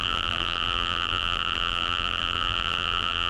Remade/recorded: remade